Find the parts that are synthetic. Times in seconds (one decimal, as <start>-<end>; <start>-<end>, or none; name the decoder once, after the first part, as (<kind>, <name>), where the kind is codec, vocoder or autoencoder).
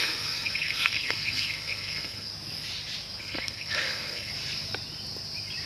0.0-2.3 (codec, SNAC); 3.2-4.3